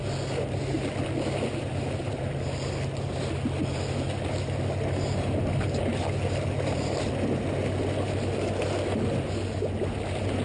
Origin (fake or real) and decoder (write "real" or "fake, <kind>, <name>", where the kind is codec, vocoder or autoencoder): real